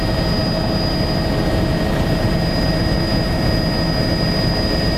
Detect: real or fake real